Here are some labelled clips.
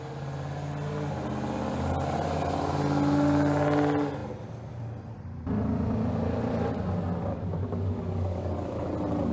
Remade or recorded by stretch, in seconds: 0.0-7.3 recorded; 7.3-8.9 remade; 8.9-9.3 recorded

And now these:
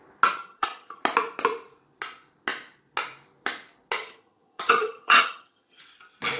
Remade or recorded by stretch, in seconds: 0.0-0.4 recorded; 0.4-1.0 remade; 1.0-4.0 recorded; 4.0-5.8 remade; 5.8-6.4 recorded

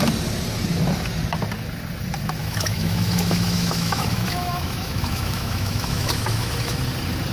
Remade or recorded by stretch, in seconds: 0.0-2.4 recorded; 2.4-6.8 remade; 6.8-7.3 recorded